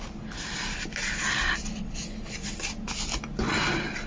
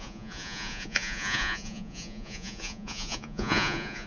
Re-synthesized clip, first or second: second